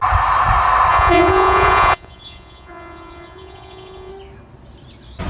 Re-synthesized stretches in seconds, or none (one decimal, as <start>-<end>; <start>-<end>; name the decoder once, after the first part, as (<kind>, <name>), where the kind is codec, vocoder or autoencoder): 0.9-4.1 (vocoder, Vocos)